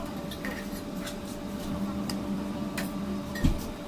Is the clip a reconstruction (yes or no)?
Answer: yes